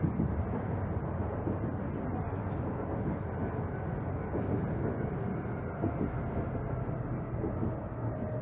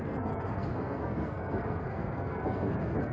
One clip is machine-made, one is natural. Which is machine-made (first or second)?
second